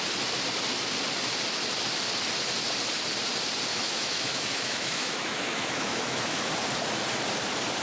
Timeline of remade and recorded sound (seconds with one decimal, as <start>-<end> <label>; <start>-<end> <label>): 0.0-3.7 recorded; 3.7-6.5 remade; 6.5-7.8 recorded